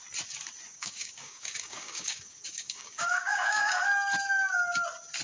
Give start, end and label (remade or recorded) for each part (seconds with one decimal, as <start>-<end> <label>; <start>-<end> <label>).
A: 0.0-0.7 recorded; 0.7-3.8 remade; 3.8-5.2 recorded